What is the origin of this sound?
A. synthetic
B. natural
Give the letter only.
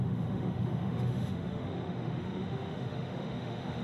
A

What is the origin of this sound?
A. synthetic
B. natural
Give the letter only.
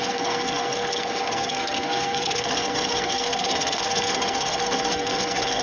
A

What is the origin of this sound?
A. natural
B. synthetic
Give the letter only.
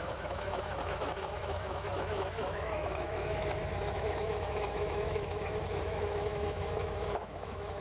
B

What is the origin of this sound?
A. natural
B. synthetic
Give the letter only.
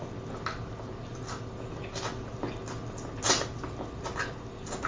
A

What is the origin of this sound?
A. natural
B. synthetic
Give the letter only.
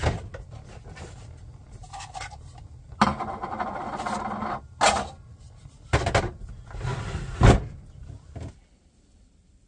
A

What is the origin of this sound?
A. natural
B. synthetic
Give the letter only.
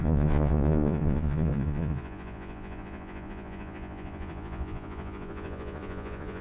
B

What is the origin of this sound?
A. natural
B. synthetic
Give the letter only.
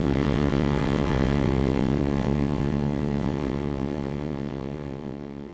B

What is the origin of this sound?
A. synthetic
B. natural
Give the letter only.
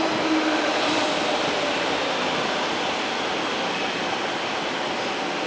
B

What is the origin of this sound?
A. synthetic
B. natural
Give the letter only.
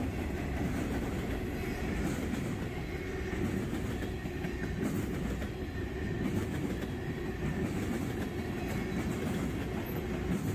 B